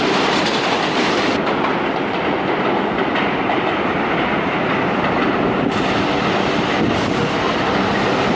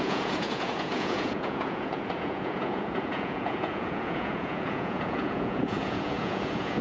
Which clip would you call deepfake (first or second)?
second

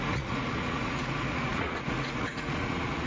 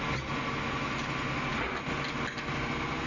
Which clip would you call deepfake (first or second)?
first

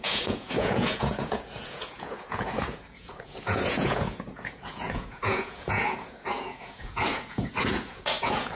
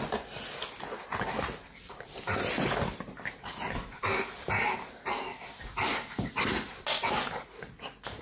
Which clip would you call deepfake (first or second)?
first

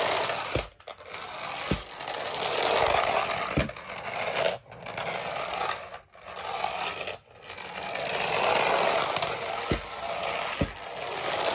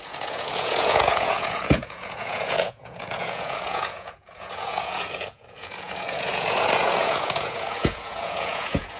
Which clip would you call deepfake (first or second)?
second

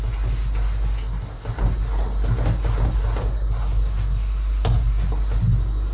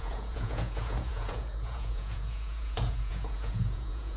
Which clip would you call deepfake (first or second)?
second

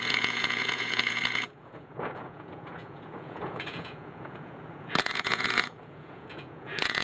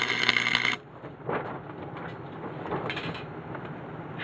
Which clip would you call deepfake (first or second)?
first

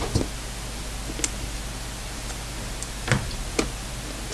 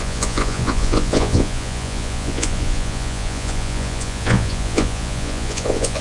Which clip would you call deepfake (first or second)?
second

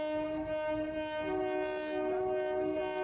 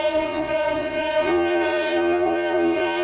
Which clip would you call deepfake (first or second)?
second